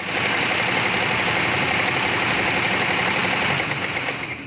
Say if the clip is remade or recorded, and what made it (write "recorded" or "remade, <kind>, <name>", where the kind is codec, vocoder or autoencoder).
remade, vocoder, BigVGAN v2